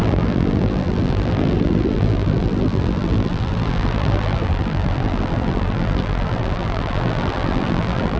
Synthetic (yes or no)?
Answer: yes